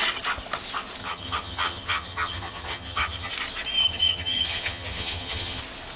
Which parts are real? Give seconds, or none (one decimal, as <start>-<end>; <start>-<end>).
0.0-1.0; 3.3-3.8; 5.6-6.0